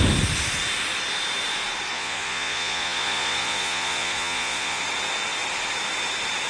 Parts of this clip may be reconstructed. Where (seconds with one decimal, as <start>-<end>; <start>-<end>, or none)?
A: 1.9-4.8